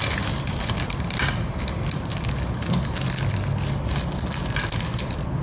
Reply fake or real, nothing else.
real